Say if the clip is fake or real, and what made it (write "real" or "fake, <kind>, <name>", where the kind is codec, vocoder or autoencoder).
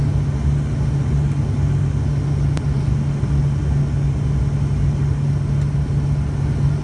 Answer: real